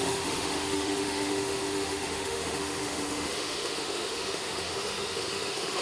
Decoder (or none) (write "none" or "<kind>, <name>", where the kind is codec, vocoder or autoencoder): autoencoder, DAC-VAE